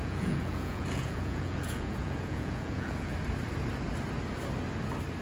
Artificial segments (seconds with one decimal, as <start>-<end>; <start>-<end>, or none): 0.0-3.1